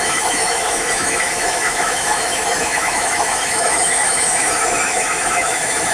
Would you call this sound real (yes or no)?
no